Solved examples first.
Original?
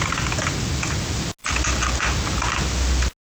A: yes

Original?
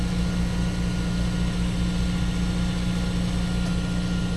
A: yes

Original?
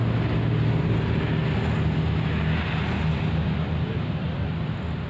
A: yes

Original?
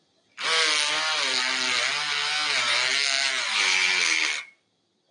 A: yes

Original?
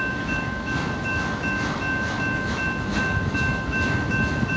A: no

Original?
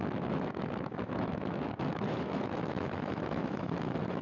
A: no